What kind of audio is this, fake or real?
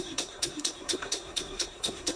fake